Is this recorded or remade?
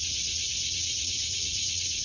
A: remade